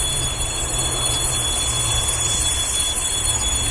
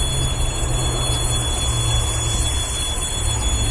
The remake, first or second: first